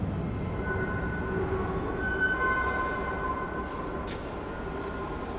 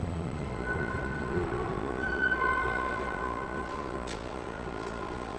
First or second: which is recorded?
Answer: first